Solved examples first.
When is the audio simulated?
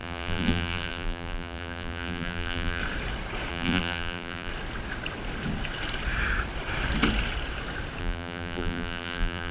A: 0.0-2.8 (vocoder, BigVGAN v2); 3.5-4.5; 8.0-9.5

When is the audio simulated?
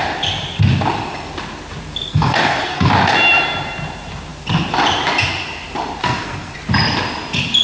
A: 2.1-2.9 (codec, SNAC); 6.0-6.6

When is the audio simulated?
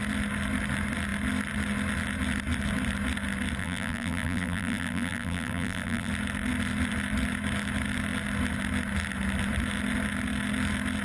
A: 3.6-6.1 (vocoder, BigVGAN v2)